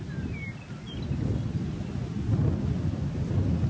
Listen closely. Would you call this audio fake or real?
real